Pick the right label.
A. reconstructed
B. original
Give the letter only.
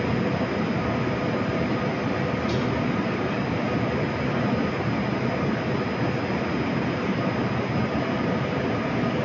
B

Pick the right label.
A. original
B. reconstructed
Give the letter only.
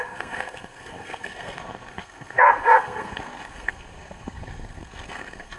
B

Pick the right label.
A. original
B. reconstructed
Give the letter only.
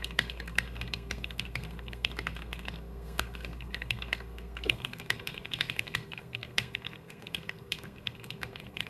B